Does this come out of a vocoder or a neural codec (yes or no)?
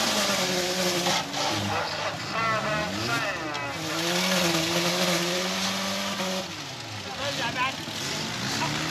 no